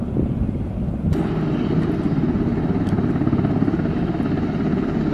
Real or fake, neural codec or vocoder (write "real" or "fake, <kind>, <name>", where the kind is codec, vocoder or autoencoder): real